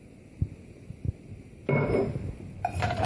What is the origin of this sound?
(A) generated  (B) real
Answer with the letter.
B